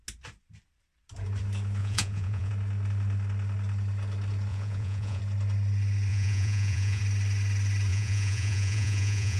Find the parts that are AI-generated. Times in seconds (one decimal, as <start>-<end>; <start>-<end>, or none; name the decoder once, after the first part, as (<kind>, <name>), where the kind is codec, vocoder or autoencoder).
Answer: 1.8-2.5 (vocoder, Vocos); 4.5-5.2; 6.1-7.0; 7.9-9.4